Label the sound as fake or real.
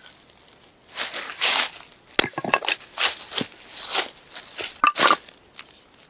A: real